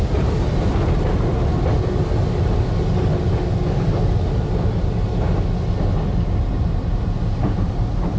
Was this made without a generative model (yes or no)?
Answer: yes